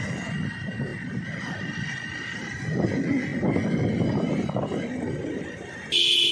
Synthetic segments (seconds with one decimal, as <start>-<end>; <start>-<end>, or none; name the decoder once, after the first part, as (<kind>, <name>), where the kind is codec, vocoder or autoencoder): 0.9-2.6 (vocoder, BigVGAN v2)